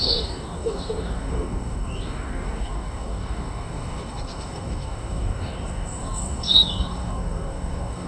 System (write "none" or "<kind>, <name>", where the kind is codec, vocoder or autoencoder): codec, DAC